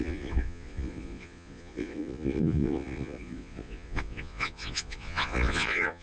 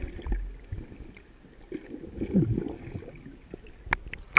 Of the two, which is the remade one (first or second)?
first